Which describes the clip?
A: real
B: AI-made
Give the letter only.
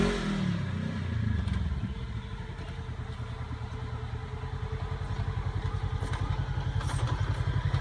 A